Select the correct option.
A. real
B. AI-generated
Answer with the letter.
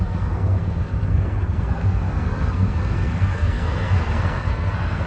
B